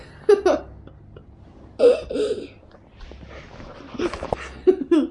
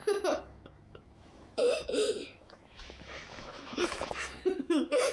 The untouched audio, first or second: first